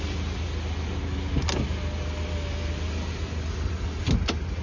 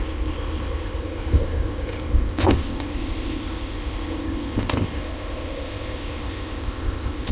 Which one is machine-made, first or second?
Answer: second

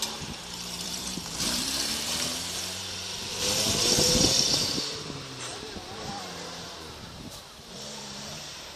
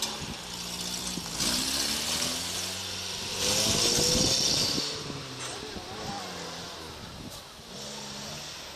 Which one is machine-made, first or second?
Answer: first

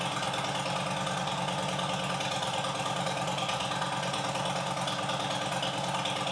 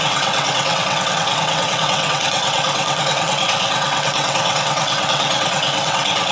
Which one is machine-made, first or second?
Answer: second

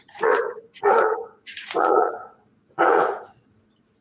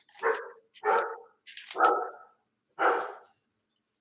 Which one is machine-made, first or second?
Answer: first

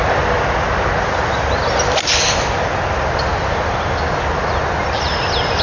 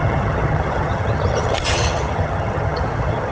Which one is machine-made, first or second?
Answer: second